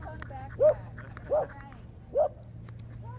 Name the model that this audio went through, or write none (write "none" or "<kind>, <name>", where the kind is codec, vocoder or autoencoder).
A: none